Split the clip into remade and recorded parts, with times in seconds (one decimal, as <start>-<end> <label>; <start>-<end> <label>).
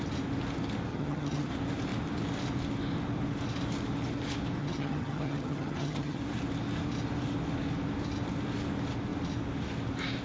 0.0-0.9 recorded; 0.9-1.5 remade; 1.5-4.6 recorded; 4.6-6.2 remade; 6.2-10.2 recorded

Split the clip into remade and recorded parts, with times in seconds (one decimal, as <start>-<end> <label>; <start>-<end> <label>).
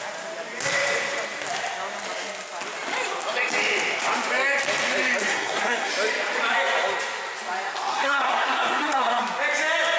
0.0-5.2 recorded; 5.2-5.9 remade; 5.9-7.9 recorded; 7.9-9.2 remade; 9.2-10.0 recorded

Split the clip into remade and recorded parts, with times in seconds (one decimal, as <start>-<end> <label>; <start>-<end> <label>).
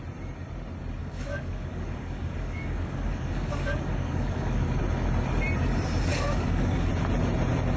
0.0-1.0 recorded; 1.0-4.8 remade; 4.8-6.1 recorded; 6.1-6.9 remade; 6.9-7.8 recorded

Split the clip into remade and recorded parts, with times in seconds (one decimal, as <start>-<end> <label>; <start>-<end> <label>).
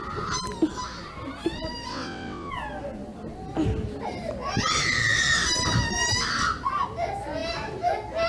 0.0-1.9 recorded; 1.9-2.5 remade; 2.5-8.3 recorded